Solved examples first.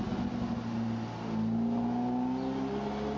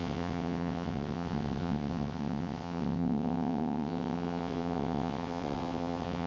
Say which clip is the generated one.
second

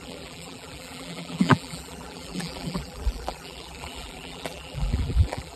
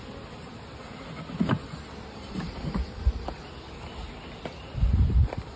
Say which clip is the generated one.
first